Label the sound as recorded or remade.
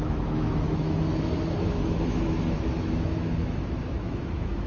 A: remade